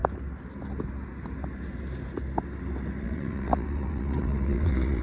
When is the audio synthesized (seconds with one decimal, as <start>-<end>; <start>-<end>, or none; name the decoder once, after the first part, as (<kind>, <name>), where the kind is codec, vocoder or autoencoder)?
3.0-5.0 (vocoder, WaveNeXt)